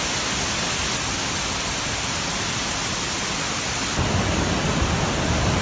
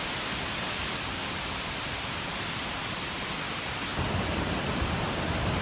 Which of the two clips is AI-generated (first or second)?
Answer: second